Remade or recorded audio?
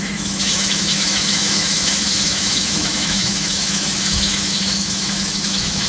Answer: remade